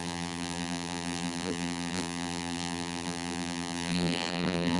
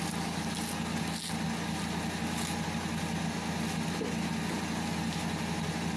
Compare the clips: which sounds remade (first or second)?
first